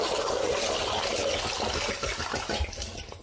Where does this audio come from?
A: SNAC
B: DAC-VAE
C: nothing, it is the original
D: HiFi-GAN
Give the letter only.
C